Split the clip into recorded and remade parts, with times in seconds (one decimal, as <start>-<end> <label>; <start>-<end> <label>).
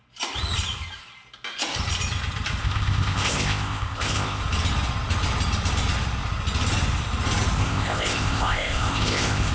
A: 0.0-2.6 recorded; 2.6-4.4 remade; 4.4-7.6 recorded; 7.6-9.5 remade